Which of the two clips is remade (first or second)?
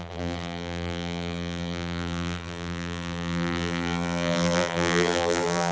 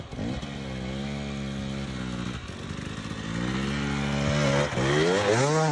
first